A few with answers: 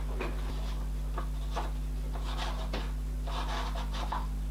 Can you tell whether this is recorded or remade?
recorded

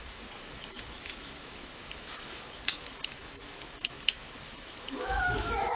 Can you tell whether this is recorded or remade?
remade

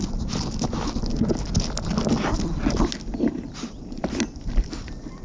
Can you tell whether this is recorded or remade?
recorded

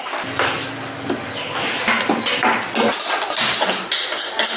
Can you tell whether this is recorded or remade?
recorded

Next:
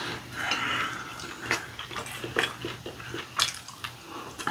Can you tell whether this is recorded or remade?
recorded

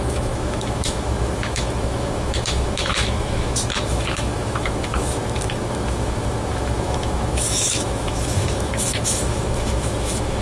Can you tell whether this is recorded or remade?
remade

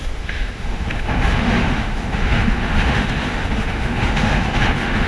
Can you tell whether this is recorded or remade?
remade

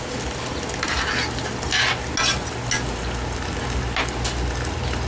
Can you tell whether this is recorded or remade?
recorded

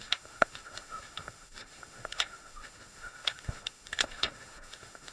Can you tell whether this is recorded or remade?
remade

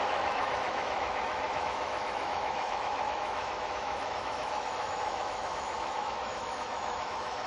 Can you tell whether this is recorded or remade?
remade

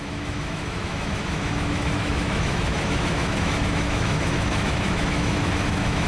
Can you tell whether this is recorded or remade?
remade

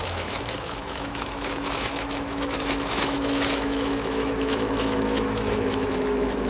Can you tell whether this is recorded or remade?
remade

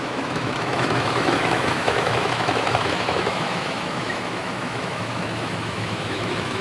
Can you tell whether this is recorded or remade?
remade